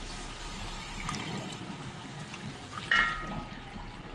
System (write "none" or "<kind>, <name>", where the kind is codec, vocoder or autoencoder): none